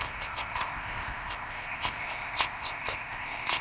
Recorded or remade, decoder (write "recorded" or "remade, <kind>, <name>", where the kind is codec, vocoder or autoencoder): remade, codec, ZipCodec